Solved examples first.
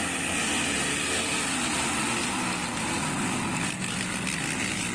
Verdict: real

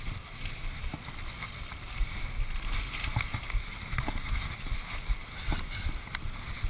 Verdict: real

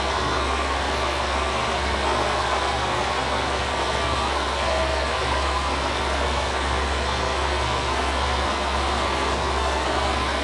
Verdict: fake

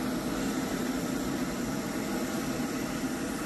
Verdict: fake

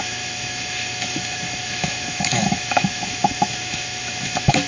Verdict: fake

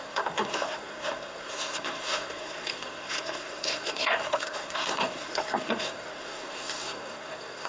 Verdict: fake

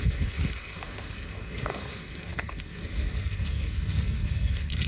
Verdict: fake